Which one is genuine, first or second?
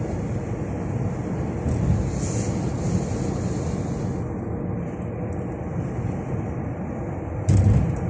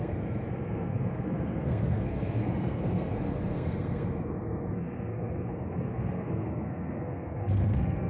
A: first